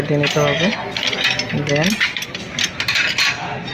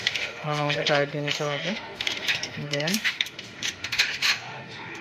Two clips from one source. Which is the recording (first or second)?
first